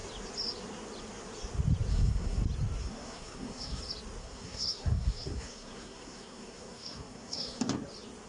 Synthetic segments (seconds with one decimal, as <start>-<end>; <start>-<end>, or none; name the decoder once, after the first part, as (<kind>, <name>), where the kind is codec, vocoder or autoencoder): 1.9-2.4 (codec, SNAC); 2.8-3.8; 4.2-7.6